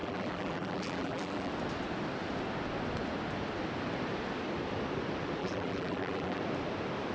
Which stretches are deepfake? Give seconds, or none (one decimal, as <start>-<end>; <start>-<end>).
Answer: 0.0-1.5; 5.4-6.4